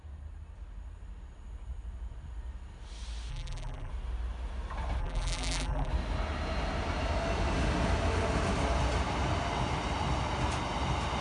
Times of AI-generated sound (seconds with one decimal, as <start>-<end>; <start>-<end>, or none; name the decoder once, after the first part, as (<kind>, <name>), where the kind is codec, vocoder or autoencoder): 3.3-3.9 (vocoder, BigVGAN v2); 5.0-5.9